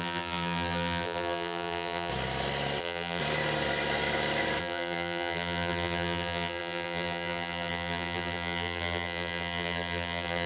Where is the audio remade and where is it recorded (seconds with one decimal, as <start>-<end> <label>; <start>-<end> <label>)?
0.0-2.1 remade; 2.1-2.8 recorded; 2.8-3.2 remade; 3.2-4.6 recorded; 4.6-10.5 remade